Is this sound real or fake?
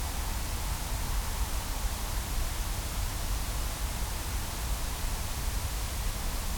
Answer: real